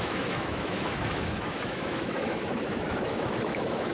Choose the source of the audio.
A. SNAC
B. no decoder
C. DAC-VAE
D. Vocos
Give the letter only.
C